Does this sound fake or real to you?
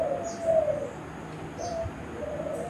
real